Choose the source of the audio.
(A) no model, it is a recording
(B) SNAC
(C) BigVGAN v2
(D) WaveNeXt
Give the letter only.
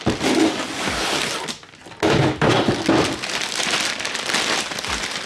A